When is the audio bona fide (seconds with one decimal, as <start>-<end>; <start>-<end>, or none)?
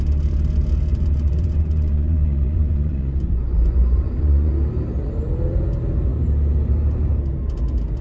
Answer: 0.0-0.9; 4.5-8.0